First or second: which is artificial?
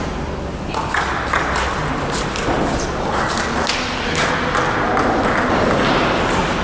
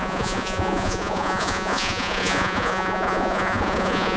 second